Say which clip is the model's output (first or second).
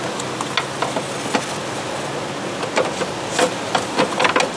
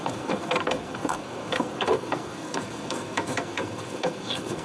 second